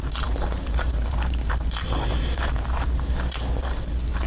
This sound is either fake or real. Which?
fake